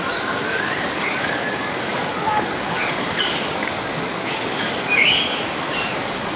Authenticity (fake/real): fake